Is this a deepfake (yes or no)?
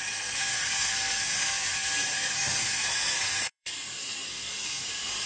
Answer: yes